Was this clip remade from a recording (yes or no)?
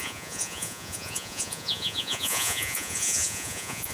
yes